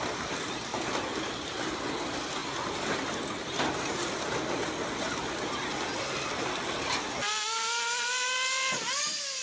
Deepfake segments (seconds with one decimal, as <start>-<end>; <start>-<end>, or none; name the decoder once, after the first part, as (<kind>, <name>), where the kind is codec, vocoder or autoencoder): 0.0-2.4 (vocoder, BigVGAN v2); 7.0-9.4